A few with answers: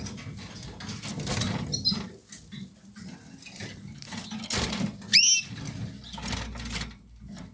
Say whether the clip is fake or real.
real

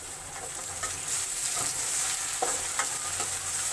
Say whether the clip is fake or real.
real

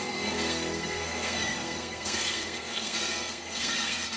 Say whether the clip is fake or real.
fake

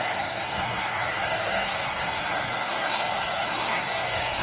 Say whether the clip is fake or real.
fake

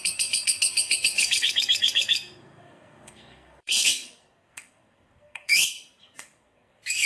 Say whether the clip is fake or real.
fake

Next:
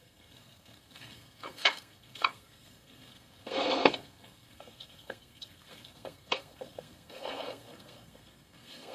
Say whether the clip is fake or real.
fake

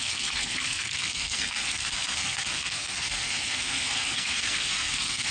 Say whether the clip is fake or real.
fake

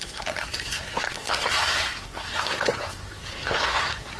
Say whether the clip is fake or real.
fake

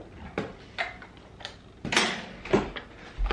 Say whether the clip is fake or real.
real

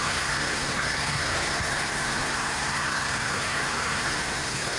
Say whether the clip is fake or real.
fake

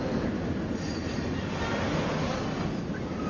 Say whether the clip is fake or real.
real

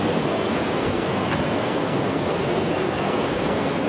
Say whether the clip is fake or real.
fake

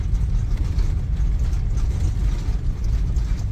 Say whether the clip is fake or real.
real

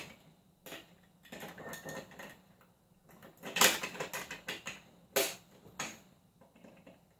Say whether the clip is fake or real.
real